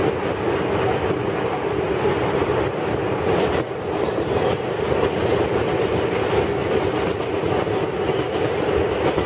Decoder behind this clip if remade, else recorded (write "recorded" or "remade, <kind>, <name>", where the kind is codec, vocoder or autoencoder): recorded